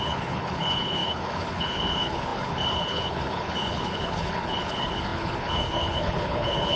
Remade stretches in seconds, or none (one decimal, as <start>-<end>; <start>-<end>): 0.0-6.8